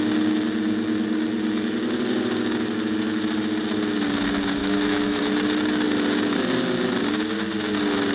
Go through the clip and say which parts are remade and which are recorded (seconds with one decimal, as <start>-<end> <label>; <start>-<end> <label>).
0.0-4.6 recorded; 4.6-5.2 remade; 5.2-8.1 recorded